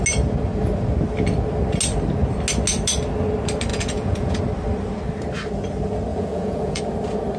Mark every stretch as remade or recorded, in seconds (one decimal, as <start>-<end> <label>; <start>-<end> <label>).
0.0-3.7 recorded; 3.7-4.4 remade; 4.4-6.1 recorded; 6.1-6.8 remade; 6.8-7.4 recorded